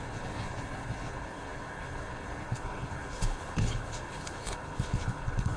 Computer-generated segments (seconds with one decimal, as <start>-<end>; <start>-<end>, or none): 0.0-5.6